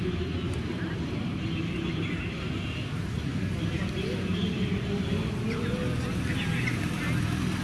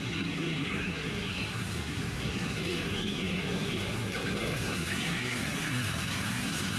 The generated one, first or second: second